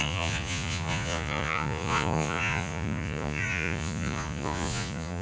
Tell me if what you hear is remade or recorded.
remade